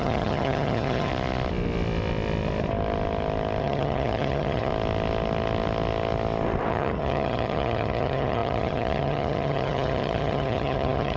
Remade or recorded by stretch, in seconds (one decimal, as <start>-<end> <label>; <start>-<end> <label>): 0.0-1.1 remade; 1.1-3.6 recorded; 3.6-4.7 remade; 4.7-6.7 recorded; 6.7-11.2 remade